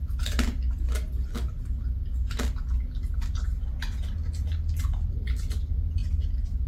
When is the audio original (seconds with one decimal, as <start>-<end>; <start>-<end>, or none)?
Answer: 0.0-6.7